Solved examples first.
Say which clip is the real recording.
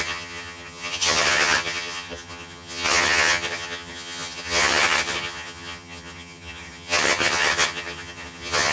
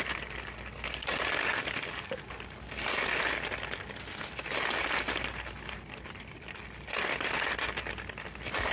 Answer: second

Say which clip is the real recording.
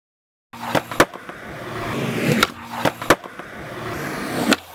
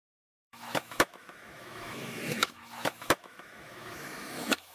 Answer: first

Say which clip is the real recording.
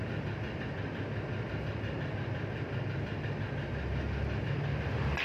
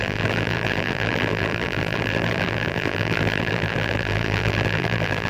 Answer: first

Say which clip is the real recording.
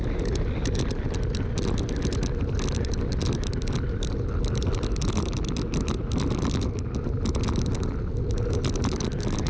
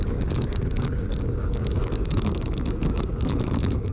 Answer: first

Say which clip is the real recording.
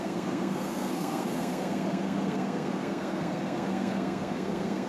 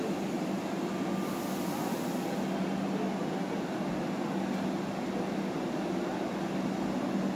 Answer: second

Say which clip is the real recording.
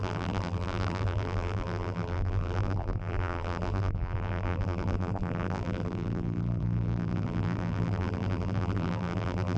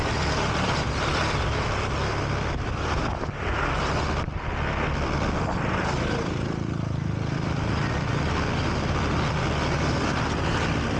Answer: second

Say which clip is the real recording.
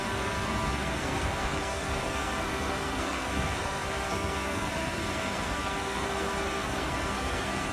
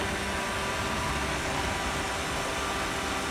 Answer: second